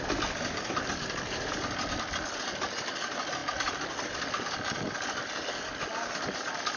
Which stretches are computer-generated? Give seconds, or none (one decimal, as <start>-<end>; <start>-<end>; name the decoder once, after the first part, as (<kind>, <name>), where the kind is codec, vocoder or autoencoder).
none